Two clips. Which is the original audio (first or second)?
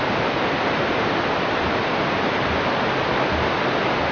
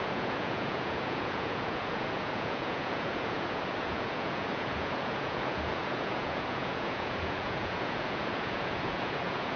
first